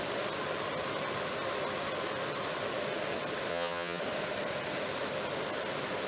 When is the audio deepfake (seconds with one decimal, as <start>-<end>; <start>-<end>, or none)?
3.5-4.0